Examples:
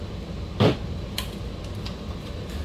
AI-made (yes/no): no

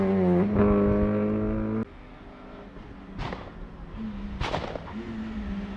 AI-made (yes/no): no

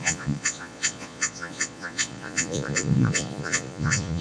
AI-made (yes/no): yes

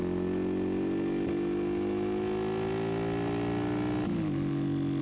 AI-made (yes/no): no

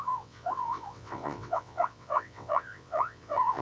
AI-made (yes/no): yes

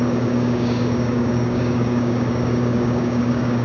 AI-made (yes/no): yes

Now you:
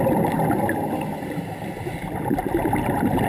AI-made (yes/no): no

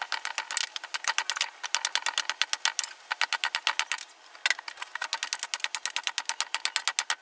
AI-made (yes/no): no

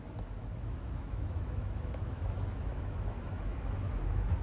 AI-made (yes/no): yes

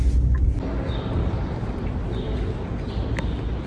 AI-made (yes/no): no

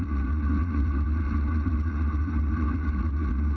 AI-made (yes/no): yes